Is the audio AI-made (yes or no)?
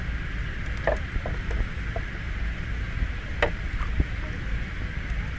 no